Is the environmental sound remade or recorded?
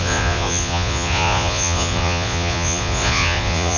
remade